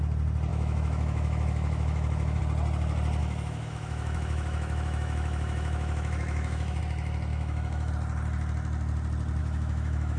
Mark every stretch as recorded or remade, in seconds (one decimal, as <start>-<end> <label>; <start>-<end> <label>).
0.0-0.5 recorded; 0.5-2.4 remade; 2.4-3.2 recorded; 3.2-6.8 remade; 6.8-7.3 recorded; 7.3-7.9 remade; 7.9-9.4 recorded; 9.4-10.2 remade